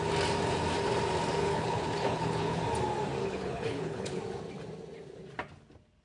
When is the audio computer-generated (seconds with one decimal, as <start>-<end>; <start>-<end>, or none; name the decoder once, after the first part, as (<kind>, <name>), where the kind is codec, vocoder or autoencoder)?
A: 1.4-2.6 (codec, HILCodec); 3.2-4.2